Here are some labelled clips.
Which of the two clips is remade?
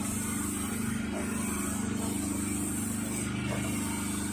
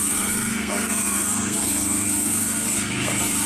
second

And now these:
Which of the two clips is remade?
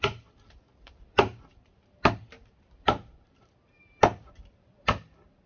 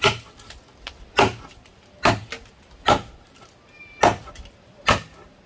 first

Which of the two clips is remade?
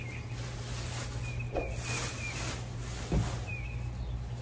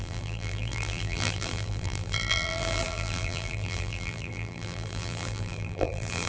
second